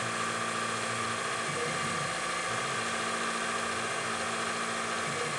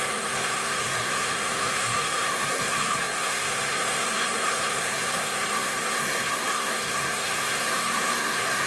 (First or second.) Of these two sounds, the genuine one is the first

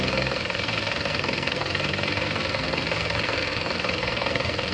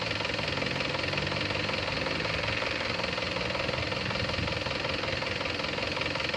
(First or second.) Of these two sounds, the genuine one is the second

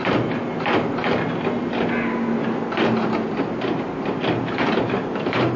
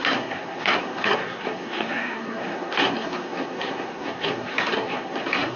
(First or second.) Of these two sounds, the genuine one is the first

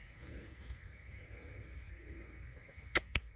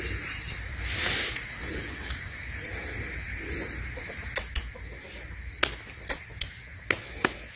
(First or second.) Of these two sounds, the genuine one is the second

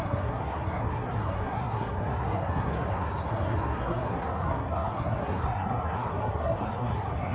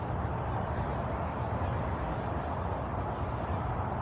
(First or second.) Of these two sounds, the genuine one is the second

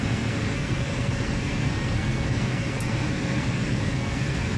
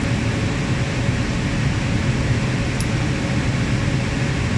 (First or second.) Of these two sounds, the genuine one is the second